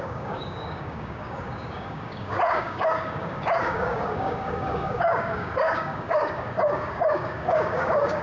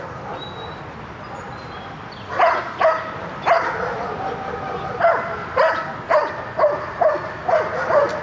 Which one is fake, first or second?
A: first